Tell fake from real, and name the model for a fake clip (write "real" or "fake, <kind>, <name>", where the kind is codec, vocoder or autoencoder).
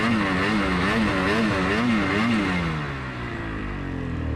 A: real